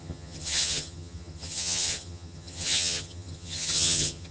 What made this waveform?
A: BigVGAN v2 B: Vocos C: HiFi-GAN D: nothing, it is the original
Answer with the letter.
C